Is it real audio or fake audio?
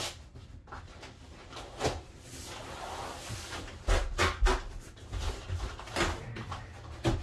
real